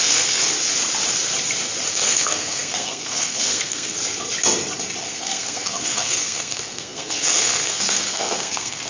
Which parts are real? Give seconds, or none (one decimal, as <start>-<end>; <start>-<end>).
0.5-1.9; 4.0-5.0